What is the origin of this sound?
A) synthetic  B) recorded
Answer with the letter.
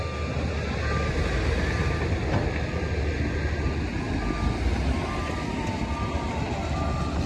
B